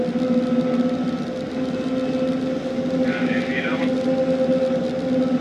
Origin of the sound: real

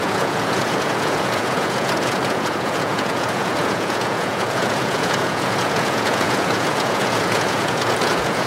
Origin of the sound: fake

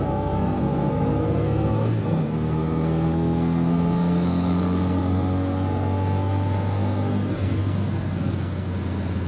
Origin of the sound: fake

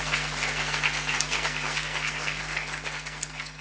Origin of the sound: fake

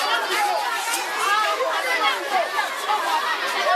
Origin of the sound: real